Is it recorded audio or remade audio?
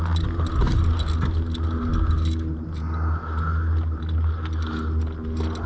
recorded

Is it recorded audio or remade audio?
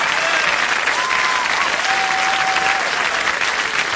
recorded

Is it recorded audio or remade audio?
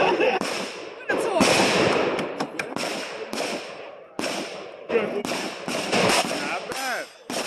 recorded